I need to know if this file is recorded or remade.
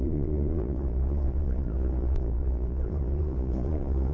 remade